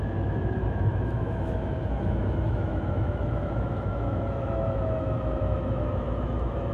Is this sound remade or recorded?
remade